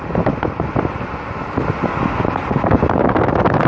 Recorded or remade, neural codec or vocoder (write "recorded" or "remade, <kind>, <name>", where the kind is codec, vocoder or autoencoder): recorded